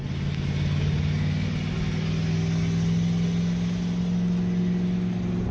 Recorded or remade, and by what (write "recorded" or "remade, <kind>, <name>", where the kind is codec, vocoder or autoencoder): recorded